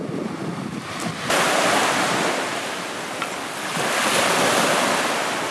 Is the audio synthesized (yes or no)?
no